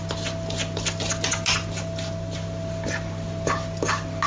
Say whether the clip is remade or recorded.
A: recorded